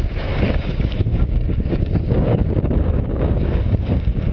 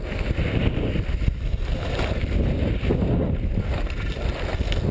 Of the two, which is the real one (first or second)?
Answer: second